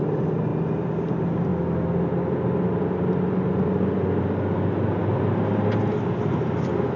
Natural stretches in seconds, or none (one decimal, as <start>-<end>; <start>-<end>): 0.0-7.0